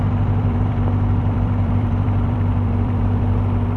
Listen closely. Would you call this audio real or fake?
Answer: fake